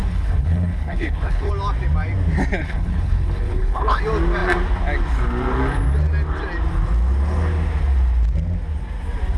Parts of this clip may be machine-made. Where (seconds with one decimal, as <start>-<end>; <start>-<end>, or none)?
0.0-1.5; 2.6-4.0